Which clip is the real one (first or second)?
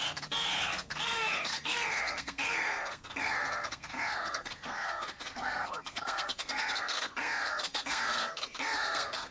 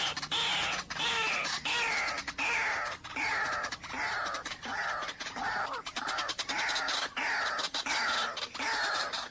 second